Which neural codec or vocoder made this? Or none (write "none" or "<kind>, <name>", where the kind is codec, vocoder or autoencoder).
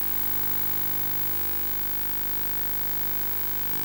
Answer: none